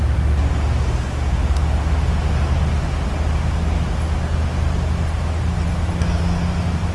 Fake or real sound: real